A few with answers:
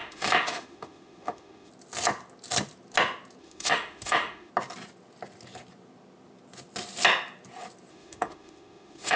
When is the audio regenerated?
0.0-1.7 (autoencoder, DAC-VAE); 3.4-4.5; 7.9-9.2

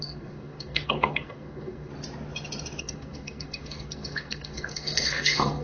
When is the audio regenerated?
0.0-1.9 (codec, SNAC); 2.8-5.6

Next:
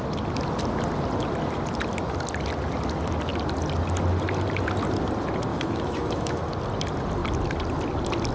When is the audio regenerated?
5.5-6.4 (autoencoder, DAC-VAE)

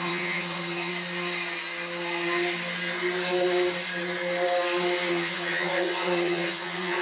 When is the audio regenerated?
0.0-0.9 (vocoder, HiFi-GAN); 5.1-7.0

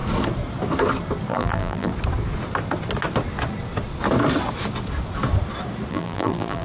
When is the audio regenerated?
1.3-1.9 (vocoder, BigVGAN v2); 5.9-6.6

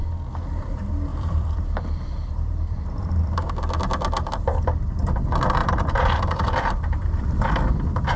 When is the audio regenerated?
1.1-3.5 (vocoder, BigVGAN v2); 5.6-7.5